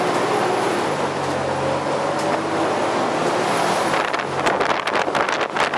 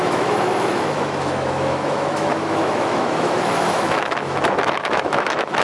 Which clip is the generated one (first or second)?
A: second